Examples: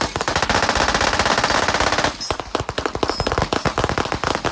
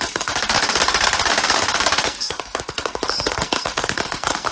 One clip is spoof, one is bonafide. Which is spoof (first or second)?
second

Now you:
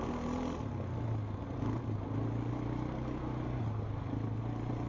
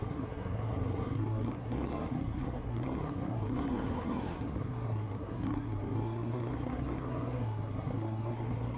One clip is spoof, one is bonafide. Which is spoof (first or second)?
second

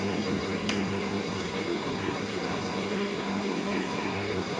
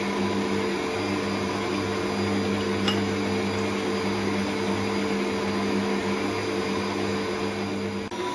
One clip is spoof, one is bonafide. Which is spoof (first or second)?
first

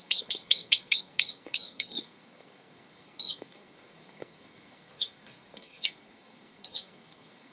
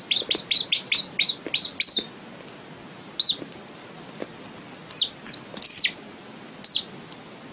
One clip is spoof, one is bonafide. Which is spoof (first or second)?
first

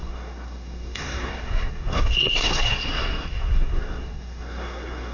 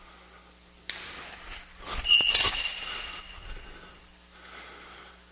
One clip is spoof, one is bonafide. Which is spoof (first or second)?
first